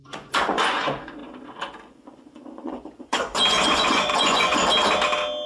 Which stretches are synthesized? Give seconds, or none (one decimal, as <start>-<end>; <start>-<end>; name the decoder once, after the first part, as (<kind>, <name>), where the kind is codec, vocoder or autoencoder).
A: 0.0-4.6 (vocoder, Vocos)